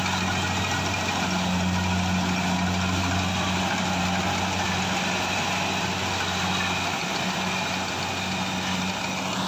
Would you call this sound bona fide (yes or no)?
yes